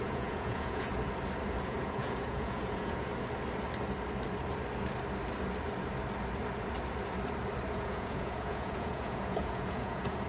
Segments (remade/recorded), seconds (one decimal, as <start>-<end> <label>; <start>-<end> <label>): 0.0-0.9 remade; 0.9-1.6 recorded; 1.6-3.1 remade; 3.1-7.7 recorded; 7.7-10.3 remade